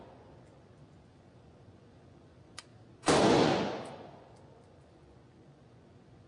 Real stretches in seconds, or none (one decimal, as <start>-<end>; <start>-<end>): 2.7-3.2